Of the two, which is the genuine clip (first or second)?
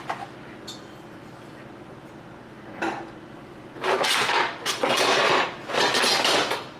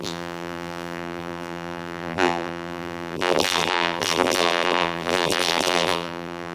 first